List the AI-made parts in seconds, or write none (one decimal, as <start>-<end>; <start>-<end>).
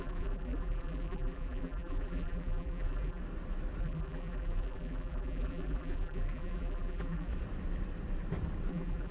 0.0-3.2; 3.8-7.3; 8.7-9.1